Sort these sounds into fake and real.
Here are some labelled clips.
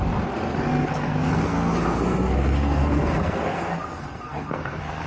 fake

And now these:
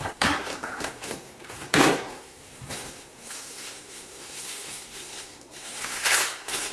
fake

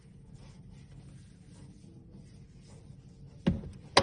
real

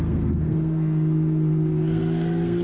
fake